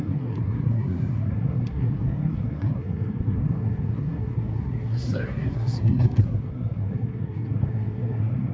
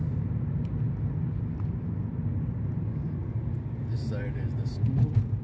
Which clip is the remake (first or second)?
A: first